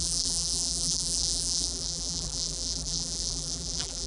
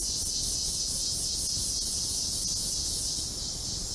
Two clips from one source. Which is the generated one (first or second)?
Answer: first